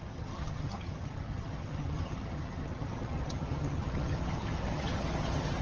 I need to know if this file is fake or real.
fake